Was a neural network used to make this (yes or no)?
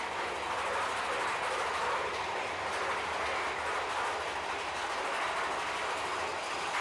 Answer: no